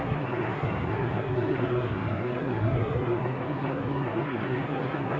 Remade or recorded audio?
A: remade